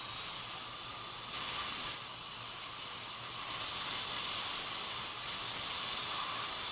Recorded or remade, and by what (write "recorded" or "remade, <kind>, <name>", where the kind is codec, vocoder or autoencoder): recorded